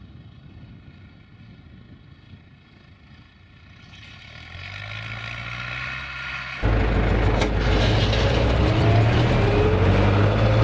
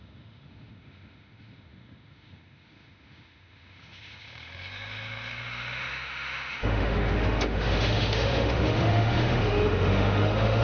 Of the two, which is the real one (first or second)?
first